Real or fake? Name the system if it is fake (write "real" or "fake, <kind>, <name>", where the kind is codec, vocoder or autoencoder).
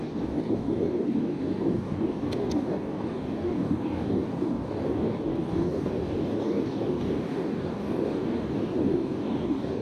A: fake, codec, DAC